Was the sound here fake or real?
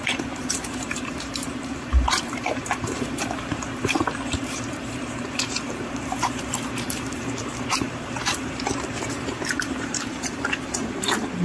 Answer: fake